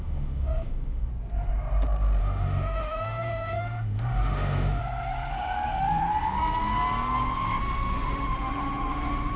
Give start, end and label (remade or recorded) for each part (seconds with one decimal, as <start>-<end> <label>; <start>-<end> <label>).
0.0-1.1 remade; 1.1-2.2 recorded; 2.2-4.8 remade; 4.8-5.3 recorded; 5.3-6.0 remade; 6.0-7.6 recorded; 7.6-9.4 remade